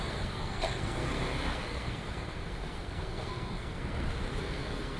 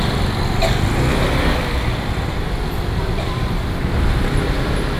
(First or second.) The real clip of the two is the second